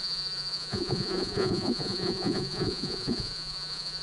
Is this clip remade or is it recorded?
remade